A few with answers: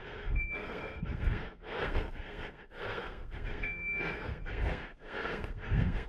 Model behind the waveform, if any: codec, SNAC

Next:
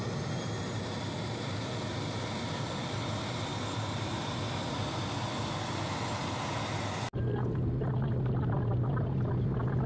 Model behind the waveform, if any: none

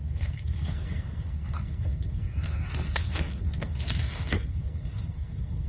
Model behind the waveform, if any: codec, SNAC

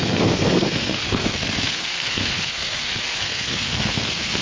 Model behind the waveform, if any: codec, SNAC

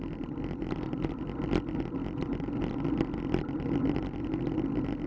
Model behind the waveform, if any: none